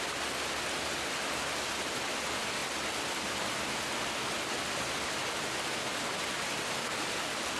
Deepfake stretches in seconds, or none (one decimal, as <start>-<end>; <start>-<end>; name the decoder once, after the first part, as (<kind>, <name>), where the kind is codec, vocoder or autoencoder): none

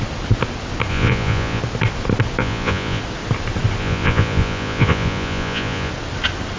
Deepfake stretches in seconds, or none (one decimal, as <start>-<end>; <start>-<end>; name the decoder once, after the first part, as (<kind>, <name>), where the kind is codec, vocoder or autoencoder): 0.9-1.6 (vocoder, Vocos); 2.4-3.0; 3.8-5.9

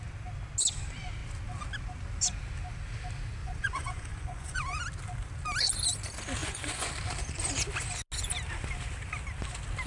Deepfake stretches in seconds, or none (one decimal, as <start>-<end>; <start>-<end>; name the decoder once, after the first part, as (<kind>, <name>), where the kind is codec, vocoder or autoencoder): 3.4-4.8 (vocoder, Vocos); 6.4-6.9

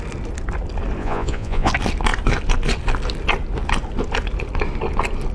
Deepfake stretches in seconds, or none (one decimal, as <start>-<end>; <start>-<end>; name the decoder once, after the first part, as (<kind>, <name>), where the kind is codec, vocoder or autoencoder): 1.0-1.7 (vocoder, Vocos)

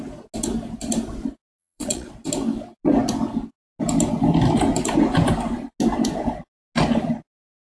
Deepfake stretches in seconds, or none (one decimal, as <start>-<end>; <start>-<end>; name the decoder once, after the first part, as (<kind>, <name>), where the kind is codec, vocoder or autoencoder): 1.6-2.1 (vocoder, Vocos)

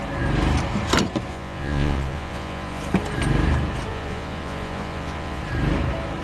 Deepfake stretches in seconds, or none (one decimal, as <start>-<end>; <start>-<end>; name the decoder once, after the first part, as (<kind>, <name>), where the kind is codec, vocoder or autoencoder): 1.3-2.8 (vocoder, Vocos); 3.9-5.4

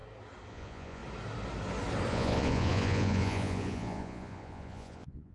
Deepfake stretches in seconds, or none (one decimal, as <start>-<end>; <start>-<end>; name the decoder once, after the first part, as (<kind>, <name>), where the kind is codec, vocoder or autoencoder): 0.5-1.0 (vocoder, Vocos); 2.1-5.3